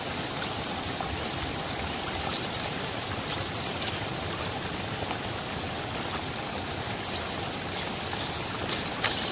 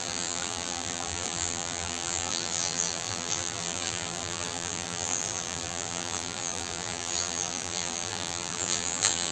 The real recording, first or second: first